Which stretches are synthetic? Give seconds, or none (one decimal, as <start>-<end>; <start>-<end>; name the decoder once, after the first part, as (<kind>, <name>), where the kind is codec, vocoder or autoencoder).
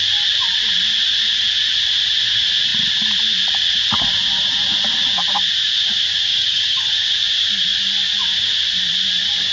6.3-6.9 (vocoder, HiFi-GAN)